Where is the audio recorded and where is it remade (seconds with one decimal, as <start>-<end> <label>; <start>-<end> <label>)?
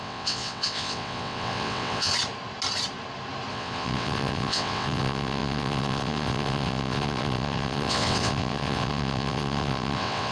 0.0-2.1 remade; 2.1-3.5 recorded; 3.5-10.3 remade